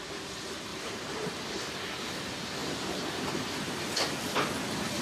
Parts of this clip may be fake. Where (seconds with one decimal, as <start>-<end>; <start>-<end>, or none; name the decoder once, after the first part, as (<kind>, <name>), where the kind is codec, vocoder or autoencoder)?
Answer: 0.7-1.3 (vocoder, BigVGAN v2); 2.6-3.7